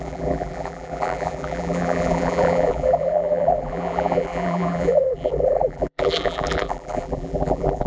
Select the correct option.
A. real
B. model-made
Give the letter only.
B